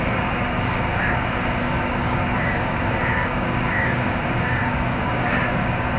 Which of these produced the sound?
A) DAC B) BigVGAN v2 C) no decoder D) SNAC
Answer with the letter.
A